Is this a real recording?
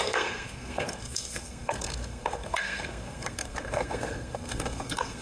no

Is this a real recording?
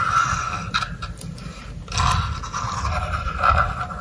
yes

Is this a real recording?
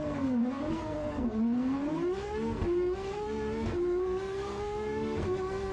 no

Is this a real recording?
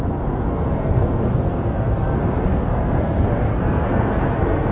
no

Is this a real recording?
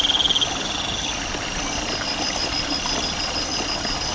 yes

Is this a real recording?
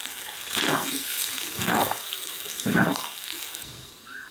no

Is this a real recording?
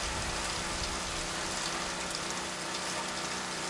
yes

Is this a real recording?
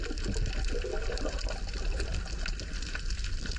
yes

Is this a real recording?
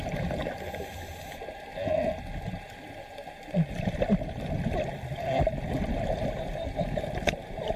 yes